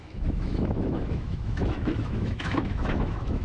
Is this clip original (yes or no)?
no